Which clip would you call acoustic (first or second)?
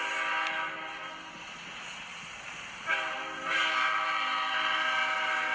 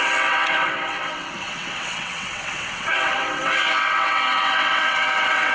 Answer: first